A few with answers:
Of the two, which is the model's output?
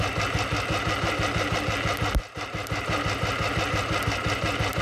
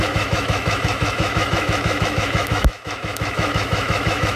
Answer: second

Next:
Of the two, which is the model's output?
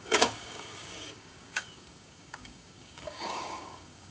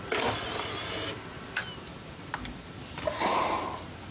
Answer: first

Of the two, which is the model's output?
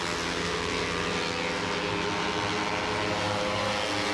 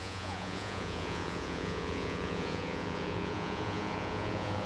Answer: second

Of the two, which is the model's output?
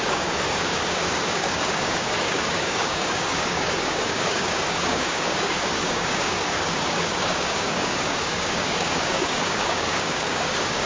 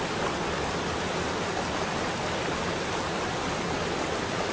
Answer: first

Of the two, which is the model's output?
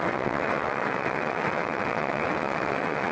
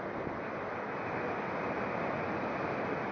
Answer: first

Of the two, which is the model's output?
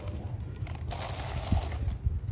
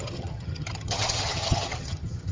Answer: second